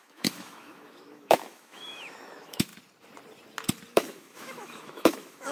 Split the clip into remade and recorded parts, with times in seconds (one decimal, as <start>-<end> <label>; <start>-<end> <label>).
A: 0.0-2.7 remade; 2.7-3.9 recorded; 3.9-5.5 remade